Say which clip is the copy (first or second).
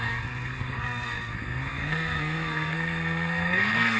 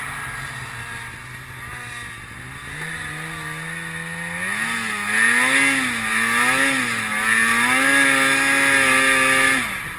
first